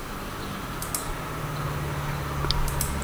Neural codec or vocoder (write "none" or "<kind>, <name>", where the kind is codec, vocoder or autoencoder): none